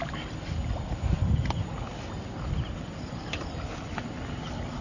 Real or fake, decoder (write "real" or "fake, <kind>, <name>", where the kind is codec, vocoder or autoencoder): real